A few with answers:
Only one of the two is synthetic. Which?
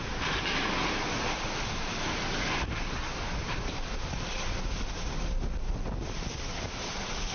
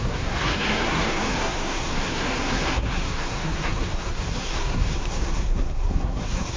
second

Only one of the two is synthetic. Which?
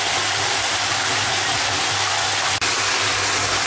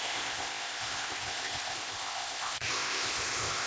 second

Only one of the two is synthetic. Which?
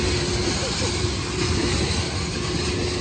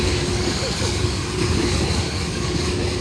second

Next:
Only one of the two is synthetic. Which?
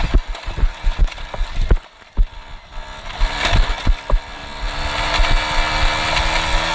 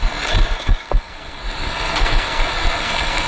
second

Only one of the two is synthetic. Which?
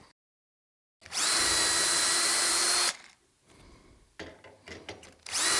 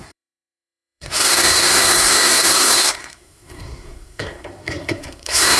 second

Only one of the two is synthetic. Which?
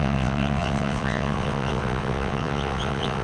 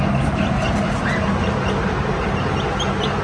first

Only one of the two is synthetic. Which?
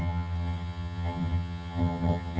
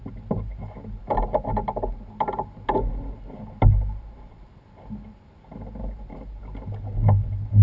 first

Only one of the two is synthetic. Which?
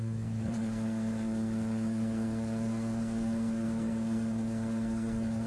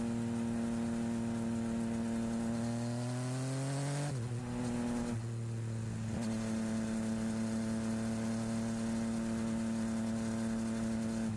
first